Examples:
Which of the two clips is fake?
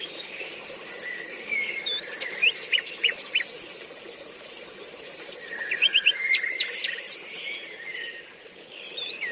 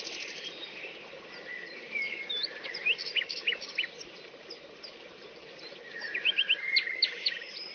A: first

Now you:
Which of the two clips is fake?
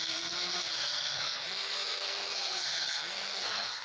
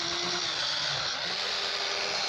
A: first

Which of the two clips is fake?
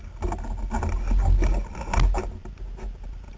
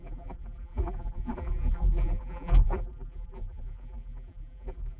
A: second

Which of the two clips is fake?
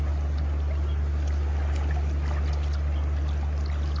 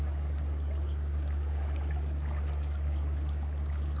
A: second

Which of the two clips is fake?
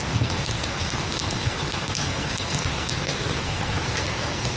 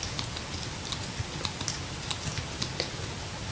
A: first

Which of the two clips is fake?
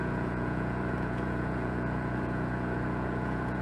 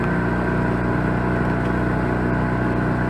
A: first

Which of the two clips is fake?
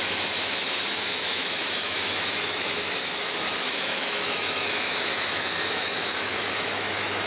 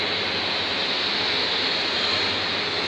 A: first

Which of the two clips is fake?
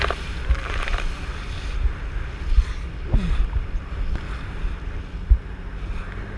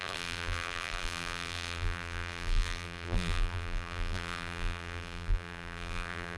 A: second